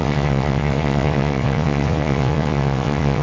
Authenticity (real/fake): fake